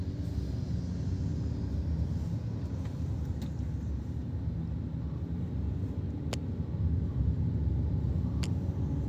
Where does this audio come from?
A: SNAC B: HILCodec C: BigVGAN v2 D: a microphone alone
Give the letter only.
D